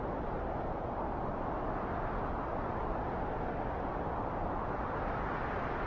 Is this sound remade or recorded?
recorded